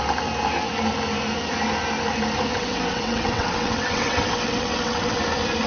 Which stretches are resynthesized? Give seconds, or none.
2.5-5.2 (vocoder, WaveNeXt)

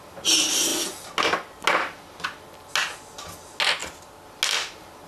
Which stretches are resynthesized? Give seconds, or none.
none

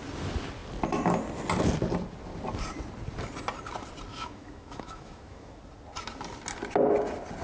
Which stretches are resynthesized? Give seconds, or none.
4.1-5.6 (autoencoder, DAC-VAE)

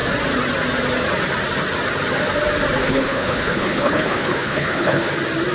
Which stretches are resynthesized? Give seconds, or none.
2.8-5.1 (codec, HILCodec)

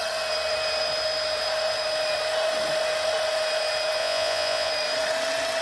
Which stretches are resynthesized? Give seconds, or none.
4.0-4.7 (vocoder, Vocos)